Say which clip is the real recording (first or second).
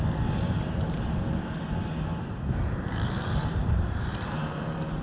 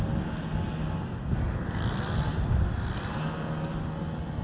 second